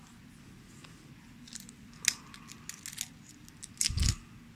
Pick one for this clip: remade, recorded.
recorded